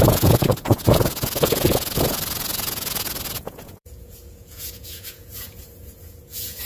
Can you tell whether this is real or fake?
fake